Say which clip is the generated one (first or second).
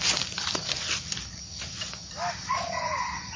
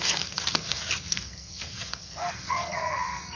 second